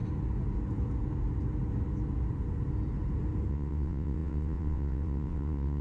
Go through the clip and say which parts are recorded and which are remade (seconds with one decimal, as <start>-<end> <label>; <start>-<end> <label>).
0.0-3.5 recorded; 3.5-5.8 remade